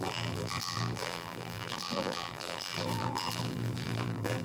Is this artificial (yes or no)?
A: yes